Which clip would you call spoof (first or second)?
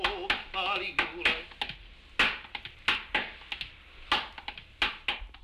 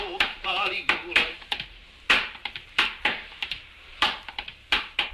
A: second